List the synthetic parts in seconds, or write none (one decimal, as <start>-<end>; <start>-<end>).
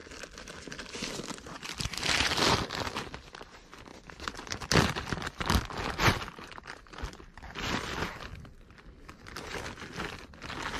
0.0-0.9; 3.9-6.0; 8.3-9.2